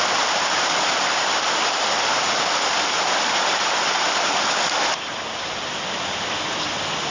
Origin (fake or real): fake